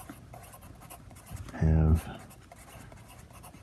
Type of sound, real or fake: real